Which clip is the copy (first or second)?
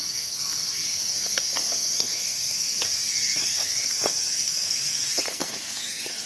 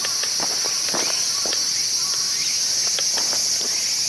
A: first